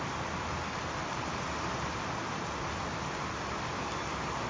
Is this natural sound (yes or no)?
yes